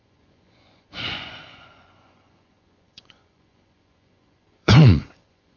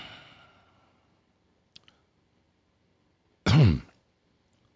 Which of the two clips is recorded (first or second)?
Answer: second